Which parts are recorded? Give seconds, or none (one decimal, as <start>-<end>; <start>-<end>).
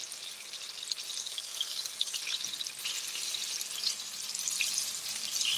0.0-1.2; 2.2-5.6